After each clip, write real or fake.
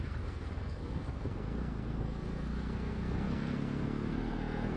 fake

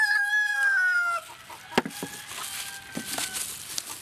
real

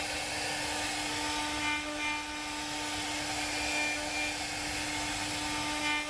real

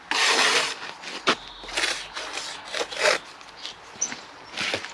real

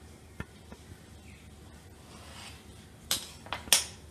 real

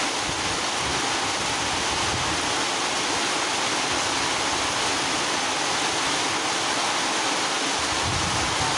real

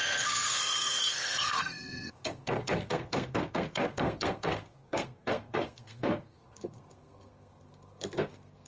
fake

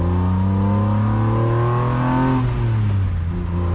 real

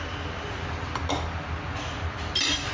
real